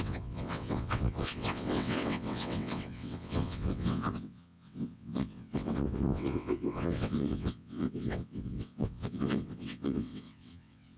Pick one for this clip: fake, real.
fake